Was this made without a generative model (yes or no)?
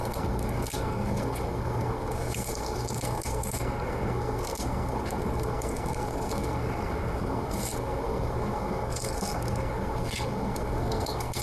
no